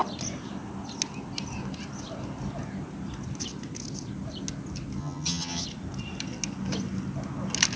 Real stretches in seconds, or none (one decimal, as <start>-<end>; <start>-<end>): 0.0-5.0; 5.6-7.8